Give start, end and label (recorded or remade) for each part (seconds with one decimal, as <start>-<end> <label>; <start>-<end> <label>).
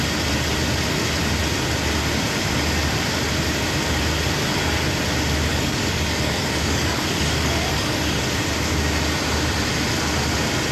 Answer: 0.0-5.5 recorded; 5.5-8.2 remade; 8.2-10.7 recorded